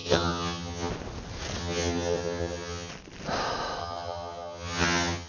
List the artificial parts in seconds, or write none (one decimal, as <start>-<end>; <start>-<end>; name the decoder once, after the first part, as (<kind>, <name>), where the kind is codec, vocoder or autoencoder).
0.0-0.9 (vocoder, HiFi-GAN); 1.6-2.9; 3.8-5.3